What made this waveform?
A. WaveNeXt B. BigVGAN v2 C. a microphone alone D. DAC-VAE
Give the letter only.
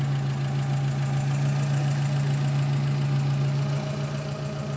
C